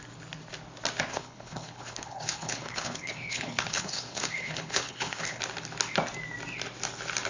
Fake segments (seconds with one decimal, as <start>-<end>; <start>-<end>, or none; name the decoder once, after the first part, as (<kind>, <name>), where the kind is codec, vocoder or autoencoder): 1.1-5.4 (codec, HILCodec)